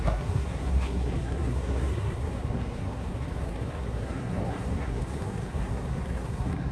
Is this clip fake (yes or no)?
yes